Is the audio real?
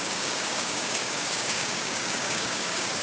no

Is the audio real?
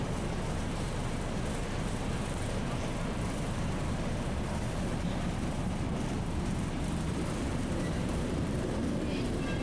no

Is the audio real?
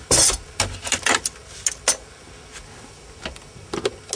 yes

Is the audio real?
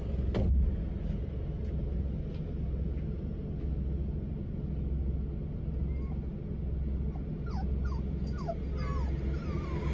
yes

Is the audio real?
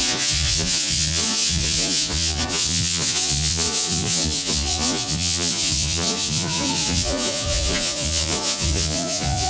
no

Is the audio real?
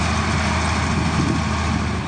yes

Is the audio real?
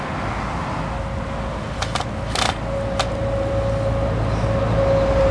yes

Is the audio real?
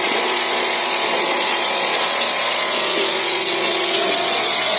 no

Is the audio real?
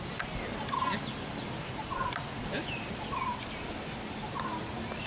yes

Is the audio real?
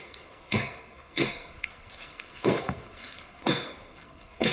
no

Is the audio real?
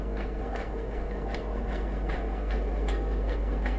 no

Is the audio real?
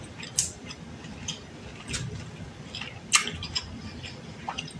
yes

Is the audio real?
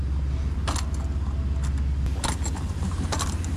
yes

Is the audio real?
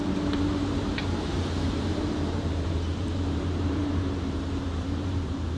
no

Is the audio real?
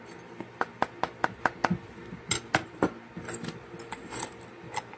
yes